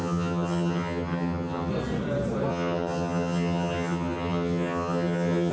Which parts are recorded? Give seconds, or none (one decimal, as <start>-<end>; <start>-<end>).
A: 1.7-2.5